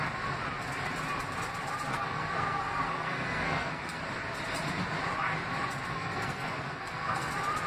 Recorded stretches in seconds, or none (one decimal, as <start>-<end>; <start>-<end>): 0.0-1.9; 4.0-5.9; 7.3-7.7